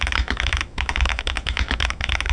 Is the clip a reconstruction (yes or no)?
yes